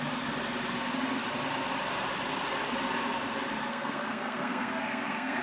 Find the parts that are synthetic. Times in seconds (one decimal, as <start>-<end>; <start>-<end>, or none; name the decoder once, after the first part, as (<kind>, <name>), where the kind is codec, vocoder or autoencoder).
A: 3.7-5.4 (codec, SNAC)